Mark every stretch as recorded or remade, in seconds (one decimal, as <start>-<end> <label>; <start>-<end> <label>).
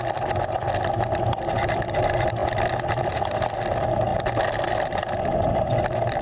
0.0-6.2 recorded